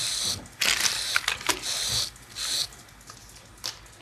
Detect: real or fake real